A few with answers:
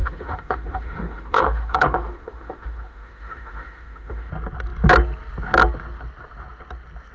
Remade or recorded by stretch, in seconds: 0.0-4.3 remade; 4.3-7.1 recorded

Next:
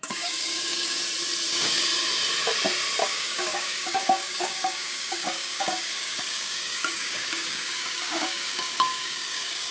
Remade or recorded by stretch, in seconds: 0.0-1.0 remade; 1.0-1.5 recorded; 1.5-1.9 remade; 1.9-3.0 recorded; 3.0-9.7 remade

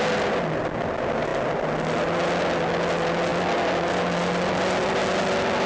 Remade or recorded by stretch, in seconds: 0.0-5.7 recorded